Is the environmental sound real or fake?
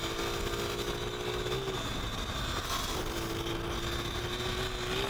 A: real